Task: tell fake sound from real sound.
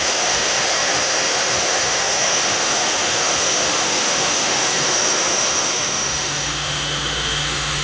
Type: fake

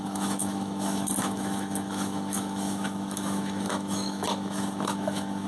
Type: fake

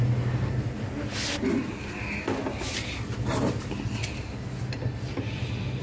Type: real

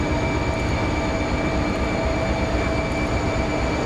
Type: real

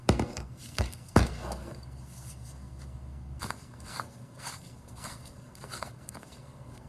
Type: fake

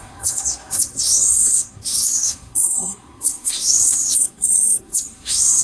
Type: fake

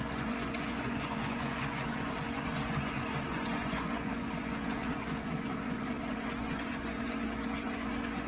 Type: fake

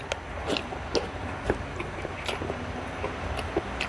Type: real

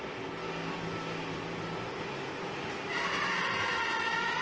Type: real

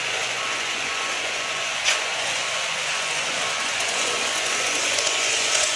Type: fake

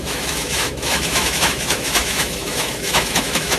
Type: fake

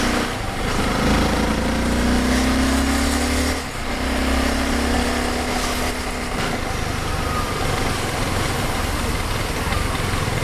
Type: real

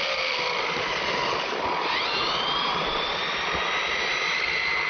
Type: real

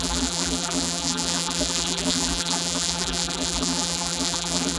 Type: fake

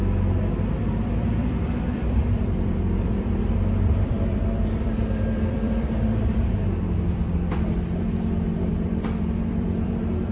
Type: fake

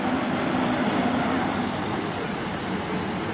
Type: real